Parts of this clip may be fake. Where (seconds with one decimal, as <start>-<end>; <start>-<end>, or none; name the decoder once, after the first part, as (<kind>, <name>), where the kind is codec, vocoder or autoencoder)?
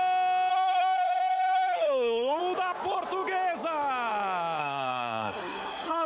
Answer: 0.5-2.4 (codec, SNAC); 4.6-6.1